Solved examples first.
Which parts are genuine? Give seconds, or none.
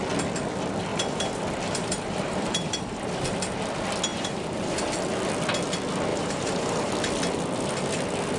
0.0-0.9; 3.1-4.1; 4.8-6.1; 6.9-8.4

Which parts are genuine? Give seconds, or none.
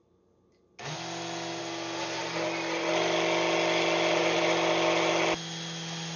0.0-6.2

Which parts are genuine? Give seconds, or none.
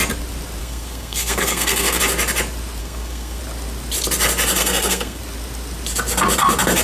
0.0-0.6; 2.0-2.8; 3.4-4.6; 5.2-6.8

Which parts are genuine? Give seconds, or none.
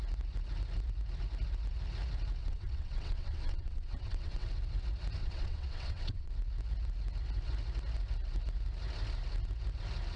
0.0-2.4; 4.5-5.2; 6.3-10.2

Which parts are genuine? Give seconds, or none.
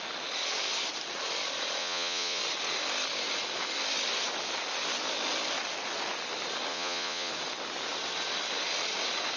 0.0-1.8; 2.4-6.7; 7.3-9.4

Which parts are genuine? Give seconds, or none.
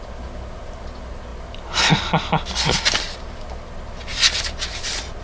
0.0-4.1; 4.8-5.2